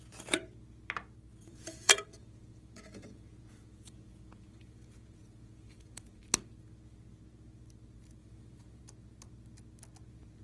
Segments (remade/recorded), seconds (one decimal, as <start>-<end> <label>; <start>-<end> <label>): 0.0-1.3 recorded; 1.3-6.2 remade; 6.2-8.2 recorded; 8.2-8.8 remade; 8.8-10.4 recorded